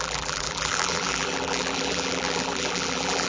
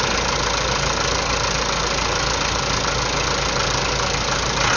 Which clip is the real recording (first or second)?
second